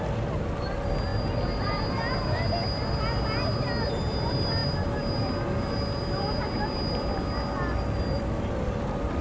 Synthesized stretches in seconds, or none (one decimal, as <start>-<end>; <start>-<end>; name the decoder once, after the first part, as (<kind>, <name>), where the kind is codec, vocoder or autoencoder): none